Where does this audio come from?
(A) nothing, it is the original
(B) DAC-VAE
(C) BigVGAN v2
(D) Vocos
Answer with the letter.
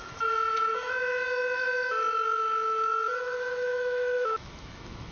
B